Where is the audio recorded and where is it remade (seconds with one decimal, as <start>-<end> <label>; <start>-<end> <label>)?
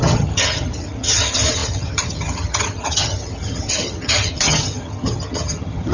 0.0-5.9 remade